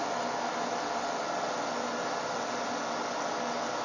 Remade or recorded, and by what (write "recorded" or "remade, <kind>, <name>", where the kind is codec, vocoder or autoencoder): recorded